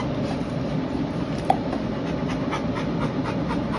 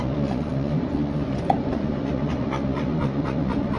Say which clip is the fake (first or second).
second